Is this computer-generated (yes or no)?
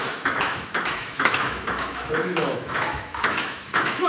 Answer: yes